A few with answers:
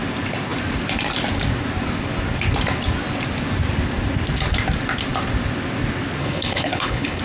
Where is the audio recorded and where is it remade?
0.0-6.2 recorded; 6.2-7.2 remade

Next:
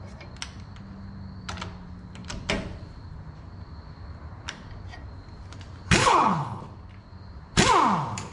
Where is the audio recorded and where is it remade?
0.0-6.0 recorded; 6.0-6.6 remade; 6.6-8.3 recorded

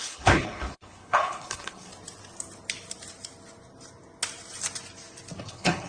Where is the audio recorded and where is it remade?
0.0-1.9 remade; 1.9-5.4 recorded; 5.4-5.9 remade

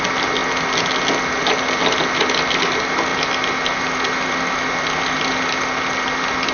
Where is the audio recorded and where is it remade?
0.0-6.5 recorded

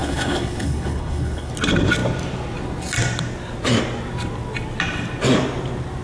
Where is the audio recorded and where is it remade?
0.0-1.5 remade; 1.5-6.0 recorded

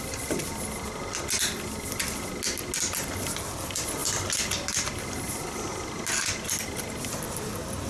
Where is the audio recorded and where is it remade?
0.0-7.9 recorded

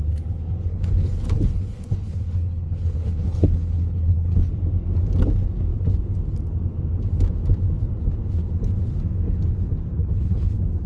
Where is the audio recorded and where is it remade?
0.0-0.7 recorded; 0.7-4.5 remade; 4.5-10.0 recorded; 10.0-10.5 remade; 10.5-10.9 recorded

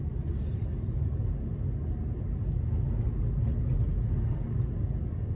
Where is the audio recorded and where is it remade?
0.0-5.3 recorded